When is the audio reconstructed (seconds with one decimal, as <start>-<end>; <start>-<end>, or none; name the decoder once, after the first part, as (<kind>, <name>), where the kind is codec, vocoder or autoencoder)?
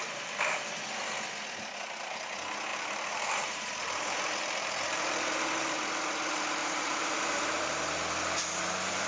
2.7-4.4 (vocoder, BigVGAN v2); 6.6-7.7